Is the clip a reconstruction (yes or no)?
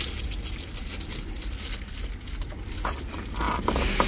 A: no